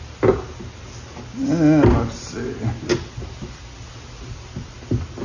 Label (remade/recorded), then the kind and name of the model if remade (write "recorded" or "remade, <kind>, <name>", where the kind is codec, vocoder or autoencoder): recorded